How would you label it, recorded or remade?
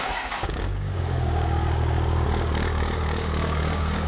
remade